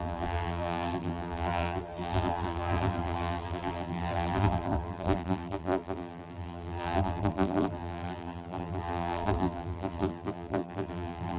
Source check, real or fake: fake